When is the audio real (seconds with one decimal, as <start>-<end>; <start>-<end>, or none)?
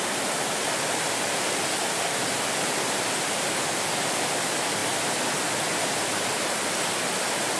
0.0-7.6